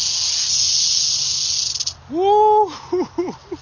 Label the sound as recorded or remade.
recorded